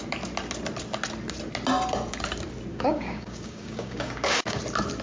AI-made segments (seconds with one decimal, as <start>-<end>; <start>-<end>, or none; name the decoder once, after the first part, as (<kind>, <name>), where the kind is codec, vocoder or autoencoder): 2.7-4.6 (codec, DAC)